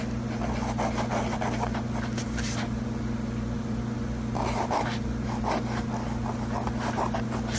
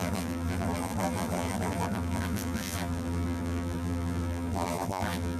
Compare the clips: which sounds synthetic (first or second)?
second